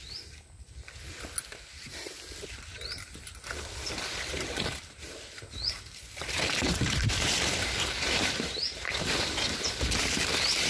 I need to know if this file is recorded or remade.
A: recorded